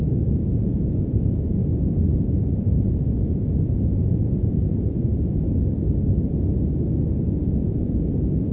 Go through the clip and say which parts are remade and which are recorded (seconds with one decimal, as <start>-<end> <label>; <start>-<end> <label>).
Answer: 0.0-1.6 remade; 1.6-2.2 recorded; 2.2-5.1 remade; 5.1-7.4 recorded; 7.4-8.5 remade